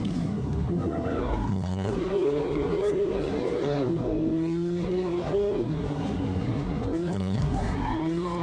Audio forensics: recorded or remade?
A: remade